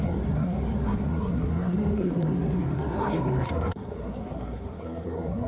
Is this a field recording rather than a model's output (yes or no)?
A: no